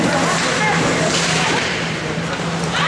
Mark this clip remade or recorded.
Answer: remade